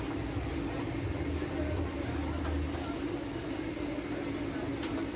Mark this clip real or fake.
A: real